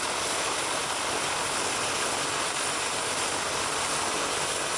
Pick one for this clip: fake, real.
real